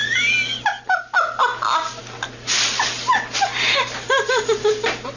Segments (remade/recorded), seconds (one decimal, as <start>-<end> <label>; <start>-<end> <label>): 0.0-5.2 recorded